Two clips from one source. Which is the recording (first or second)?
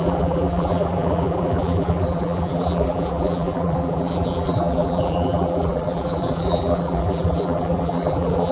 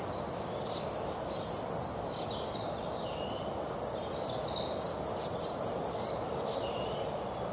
second